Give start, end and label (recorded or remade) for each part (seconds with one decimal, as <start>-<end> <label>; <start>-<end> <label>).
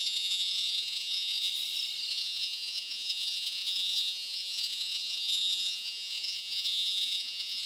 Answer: 0.0-1.5 remade; 1.5-2.1 recorded; 2.1-7.7 remade